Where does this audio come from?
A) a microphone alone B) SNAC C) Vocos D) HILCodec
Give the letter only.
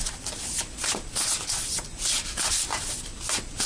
A